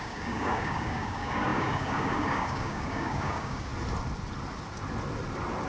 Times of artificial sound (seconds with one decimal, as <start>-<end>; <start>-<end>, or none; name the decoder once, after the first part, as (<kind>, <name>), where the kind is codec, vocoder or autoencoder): 0.0-3.7 (codec, DAC)

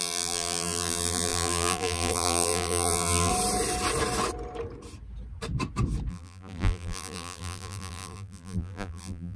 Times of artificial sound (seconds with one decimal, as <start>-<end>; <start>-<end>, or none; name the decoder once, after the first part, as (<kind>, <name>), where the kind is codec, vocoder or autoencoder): 0.0-3.3 (vocoder, BigVGAN v2); 6.1-9.4

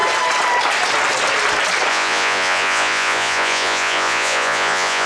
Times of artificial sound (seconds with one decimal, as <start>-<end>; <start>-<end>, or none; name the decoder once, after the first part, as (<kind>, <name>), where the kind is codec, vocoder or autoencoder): 1.9-5.1 (vocoder, Vocos)

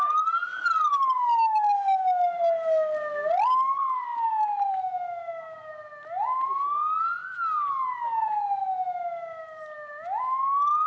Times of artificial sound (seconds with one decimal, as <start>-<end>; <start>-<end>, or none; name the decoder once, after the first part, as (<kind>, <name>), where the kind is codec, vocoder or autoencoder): none